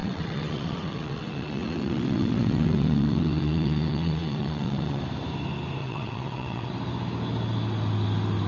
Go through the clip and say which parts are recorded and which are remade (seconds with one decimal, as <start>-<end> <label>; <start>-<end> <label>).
0.0-5.0 remade; 5.0-5.8 recorded; 5.8-6.7 remade; 6.7-8.5 recorded